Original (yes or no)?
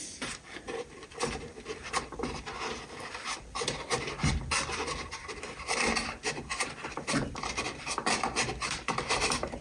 no